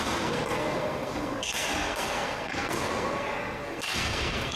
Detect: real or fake fake